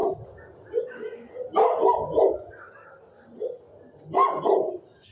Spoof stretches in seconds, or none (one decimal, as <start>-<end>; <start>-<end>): 0.0-0.7